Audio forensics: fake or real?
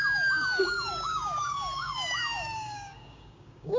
fake